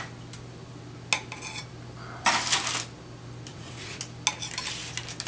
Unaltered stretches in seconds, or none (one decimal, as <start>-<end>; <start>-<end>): 0.0-3.5; 4.0-5.3